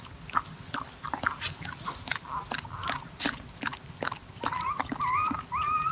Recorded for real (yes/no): yes